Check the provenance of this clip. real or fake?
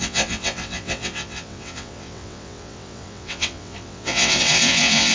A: fake